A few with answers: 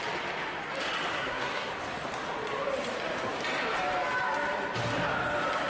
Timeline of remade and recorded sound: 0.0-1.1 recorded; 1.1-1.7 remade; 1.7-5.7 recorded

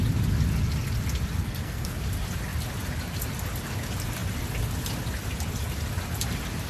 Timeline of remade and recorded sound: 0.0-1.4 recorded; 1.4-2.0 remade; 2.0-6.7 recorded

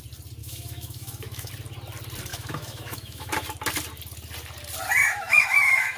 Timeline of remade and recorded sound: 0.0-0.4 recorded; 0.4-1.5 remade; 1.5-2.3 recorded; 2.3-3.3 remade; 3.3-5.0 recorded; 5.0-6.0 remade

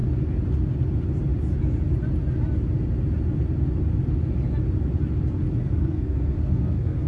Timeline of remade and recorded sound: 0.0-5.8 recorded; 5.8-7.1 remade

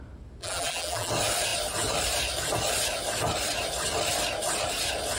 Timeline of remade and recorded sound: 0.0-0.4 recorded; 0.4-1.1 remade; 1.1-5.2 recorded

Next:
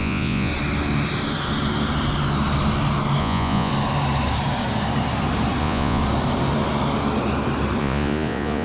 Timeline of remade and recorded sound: 0.0-0.5 remade; 0.5-3.2 recorded; 3.2-3.7 remade; 3.7-5.6 recorded; 5.6-6.0 remade; 6.0-7.8 recorded; 7.8-8.6 remade

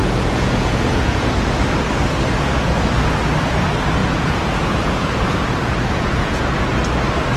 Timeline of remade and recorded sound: 0.0-1.3 remade; 1.3-4.0 recorded; 4.0-6.4 remade; 6.4-7.4 recorded